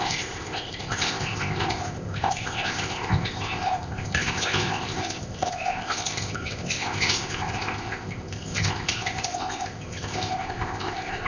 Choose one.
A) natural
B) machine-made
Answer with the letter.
B